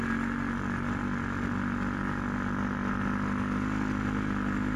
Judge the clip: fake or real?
real